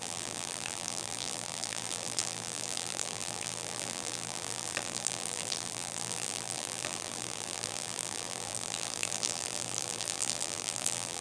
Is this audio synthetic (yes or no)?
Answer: yes